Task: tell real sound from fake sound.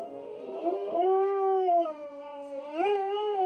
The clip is fake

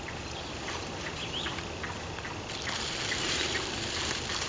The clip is real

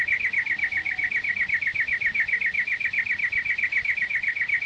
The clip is real